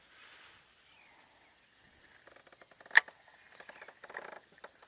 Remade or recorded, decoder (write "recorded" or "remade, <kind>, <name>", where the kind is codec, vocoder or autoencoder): recorded